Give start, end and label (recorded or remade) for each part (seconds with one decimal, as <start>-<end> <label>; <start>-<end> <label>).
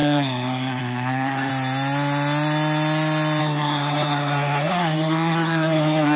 0.0-1.5 remade; 1.5-3.4 recorded; 3.4-6.2 remade